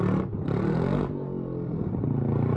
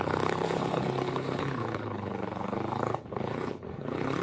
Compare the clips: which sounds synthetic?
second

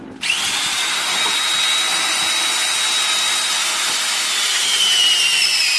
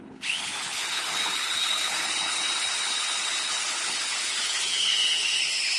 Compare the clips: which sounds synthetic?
second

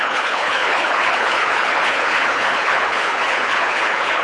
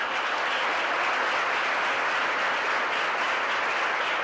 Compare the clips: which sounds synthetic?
first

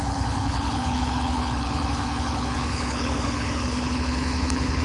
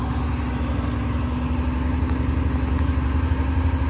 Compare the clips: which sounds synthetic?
first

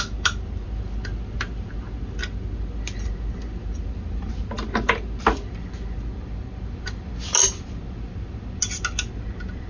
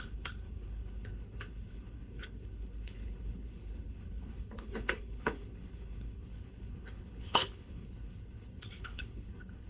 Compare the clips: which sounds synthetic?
second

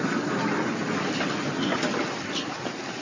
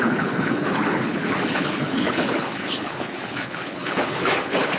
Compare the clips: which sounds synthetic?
second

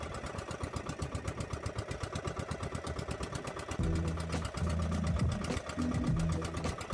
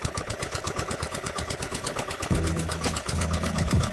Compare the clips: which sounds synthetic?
second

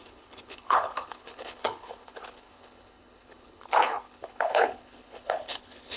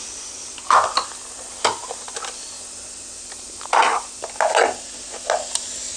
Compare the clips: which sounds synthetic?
first